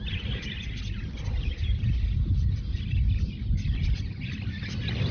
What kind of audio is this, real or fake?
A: real